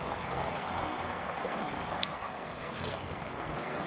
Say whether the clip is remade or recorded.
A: remade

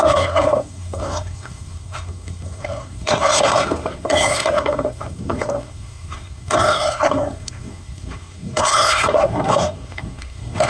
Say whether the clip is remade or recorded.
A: remade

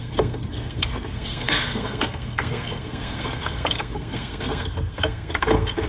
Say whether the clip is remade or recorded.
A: remade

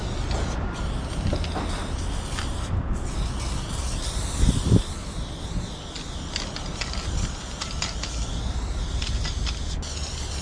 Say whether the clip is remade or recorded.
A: recorded